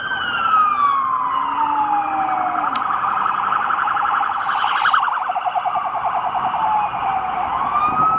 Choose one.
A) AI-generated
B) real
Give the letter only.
B